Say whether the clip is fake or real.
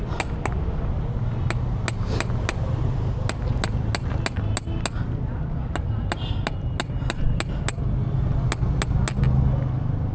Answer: real